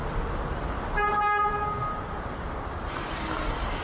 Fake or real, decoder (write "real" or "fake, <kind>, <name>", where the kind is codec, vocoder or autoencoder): real